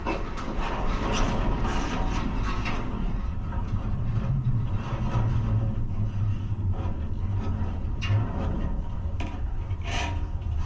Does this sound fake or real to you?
real